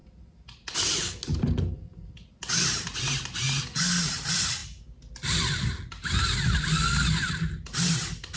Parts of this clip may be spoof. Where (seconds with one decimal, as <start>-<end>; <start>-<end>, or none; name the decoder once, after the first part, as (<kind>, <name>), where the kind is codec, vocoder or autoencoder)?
none